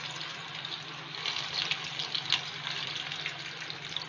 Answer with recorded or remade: recorded